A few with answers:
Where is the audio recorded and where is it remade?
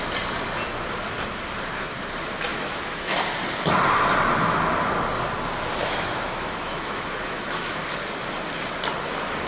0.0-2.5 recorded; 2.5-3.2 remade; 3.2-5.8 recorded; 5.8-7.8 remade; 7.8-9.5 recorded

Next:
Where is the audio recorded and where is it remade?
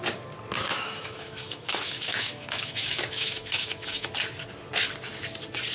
0.0-0.7 recorded; 0.7-4.1 remade; 4.1-5.7 recorded